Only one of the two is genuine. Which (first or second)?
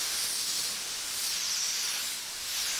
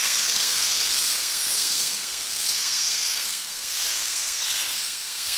first